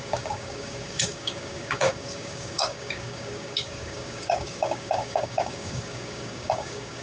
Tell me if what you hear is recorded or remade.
remade